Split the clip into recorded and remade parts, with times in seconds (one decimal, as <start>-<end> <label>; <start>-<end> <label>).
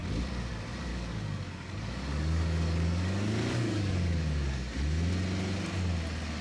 0.0-0.9 recorded; 0.9-4.7 remade; 4.7-6.4 recorded